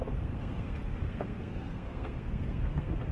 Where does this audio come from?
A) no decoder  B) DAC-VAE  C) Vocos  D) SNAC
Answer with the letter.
D